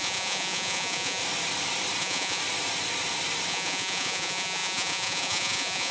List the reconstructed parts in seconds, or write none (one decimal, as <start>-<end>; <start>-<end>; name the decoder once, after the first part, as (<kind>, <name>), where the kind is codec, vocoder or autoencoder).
0.0-1.2 (vocoder, Vocos); 2.0-2.4; 3.5-5.9